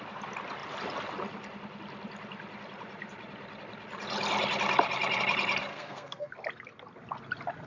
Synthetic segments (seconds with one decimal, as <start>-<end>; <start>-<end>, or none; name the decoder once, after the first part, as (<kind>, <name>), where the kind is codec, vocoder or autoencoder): 5.7-6.3 (codec, SNAC)